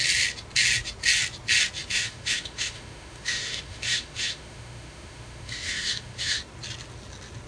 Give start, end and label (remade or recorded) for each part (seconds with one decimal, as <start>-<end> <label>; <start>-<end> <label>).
0.0-1.9 recorded; 1.9-6.4 remade; 6.4-7.5 recorded